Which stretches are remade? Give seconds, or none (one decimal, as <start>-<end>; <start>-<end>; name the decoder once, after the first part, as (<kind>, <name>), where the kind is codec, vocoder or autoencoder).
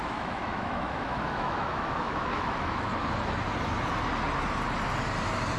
0.0-2.9 (autoencoder, DAC-VAE)